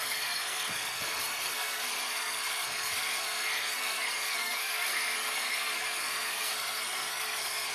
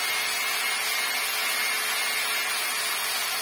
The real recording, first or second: second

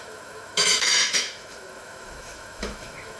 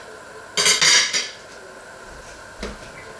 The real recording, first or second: second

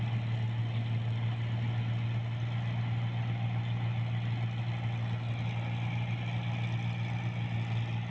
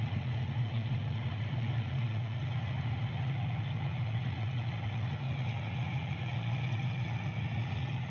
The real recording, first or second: first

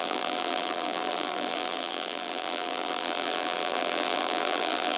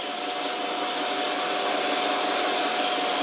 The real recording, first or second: second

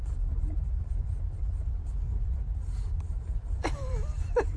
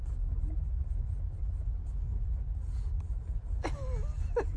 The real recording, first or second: second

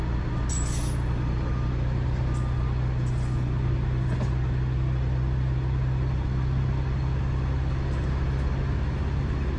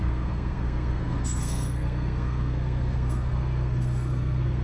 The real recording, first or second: first